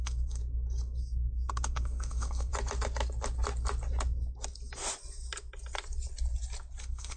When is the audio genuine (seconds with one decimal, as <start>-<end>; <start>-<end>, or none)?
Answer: 0.4-1.0; 2.5-6.8